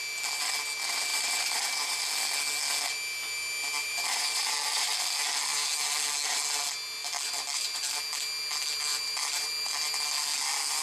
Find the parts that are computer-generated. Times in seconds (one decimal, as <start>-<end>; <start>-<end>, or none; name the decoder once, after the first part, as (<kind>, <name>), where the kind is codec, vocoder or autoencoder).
1.1-2.1 (vocoder, BigVGAN v2); 3.8-4.9; 7.0-8.0; 8.9-9.5

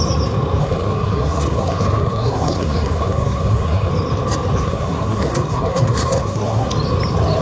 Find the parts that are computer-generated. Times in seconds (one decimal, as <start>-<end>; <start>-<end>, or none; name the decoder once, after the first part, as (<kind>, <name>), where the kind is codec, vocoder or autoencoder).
0.6-3.9 (codec, SNAC); 4.6-6.7

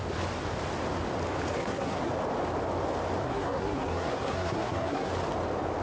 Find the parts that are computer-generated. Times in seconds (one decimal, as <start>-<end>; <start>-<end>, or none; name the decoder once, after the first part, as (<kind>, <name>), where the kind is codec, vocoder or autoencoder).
1.5-2.1 (codec, SNAC); 3.2-5.1

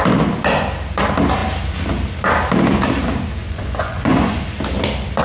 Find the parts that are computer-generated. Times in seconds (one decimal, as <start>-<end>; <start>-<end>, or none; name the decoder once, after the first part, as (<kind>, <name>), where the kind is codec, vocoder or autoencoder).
3.4-4.4 (vocoder, Vocos)